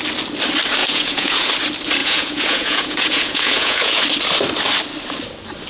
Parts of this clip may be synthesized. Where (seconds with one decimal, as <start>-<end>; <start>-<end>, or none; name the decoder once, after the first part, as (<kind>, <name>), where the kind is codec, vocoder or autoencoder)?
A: 0.8-1.5 (vocoder, Vocos); 2.0-4.0